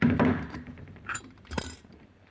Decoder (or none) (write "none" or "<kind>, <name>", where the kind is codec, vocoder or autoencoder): vocoder, BigVGAN v2